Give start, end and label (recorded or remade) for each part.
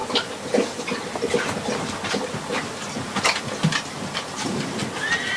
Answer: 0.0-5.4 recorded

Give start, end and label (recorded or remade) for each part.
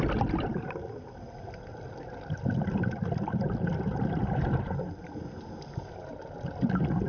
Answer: 0.0-7.1 recorded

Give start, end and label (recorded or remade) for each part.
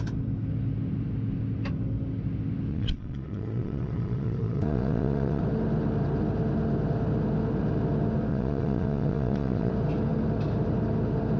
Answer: 0.0-2.7 recorded; 2.7-5.4 remade; 5.4-8.3 recorded; 8.3-9.7 remade; 9.7-11.4 recorded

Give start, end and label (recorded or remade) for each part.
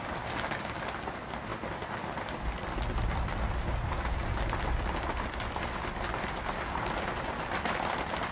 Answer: 0.0-8.3 recorded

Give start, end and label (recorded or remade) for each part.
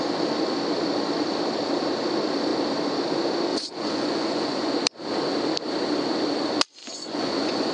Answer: 0.0-3.5 recorded; 3.5-4.7 remade; 4.7-6.8 recorded; 6.8-7.7 remade